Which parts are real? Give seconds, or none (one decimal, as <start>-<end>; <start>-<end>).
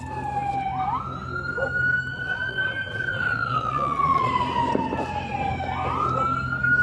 0.0-2.1; 4.3-6.8